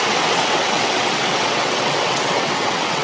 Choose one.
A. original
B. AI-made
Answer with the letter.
B